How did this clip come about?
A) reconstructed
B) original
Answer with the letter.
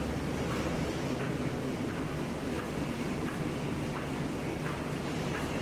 B